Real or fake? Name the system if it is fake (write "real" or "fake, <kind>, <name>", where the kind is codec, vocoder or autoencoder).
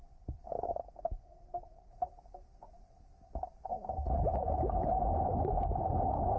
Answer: fake, vocoder, BigVGAN v2